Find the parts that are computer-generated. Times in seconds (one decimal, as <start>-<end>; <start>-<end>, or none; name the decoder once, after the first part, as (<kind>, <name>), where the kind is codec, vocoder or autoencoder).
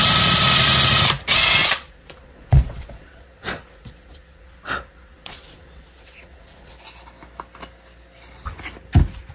1.6-6.7 (vocoder, Vocos)